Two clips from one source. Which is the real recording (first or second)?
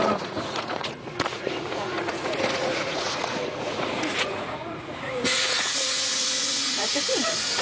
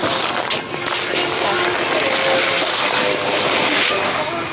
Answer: second